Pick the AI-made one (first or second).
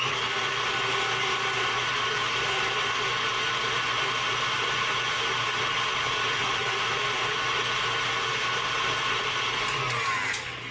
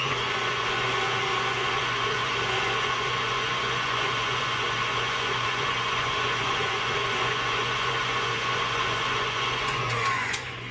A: second